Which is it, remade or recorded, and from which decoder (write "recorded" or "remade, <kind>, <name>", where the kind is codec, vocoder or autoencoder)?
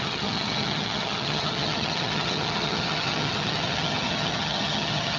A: remade, vocoder, HiFi-GAN